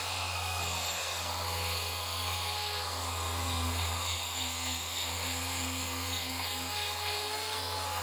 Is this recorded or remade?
remade